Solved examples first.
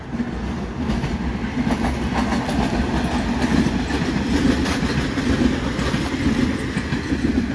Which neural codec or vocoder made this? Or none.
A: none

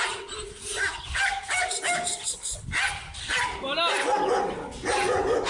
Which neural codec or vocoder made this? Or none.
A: none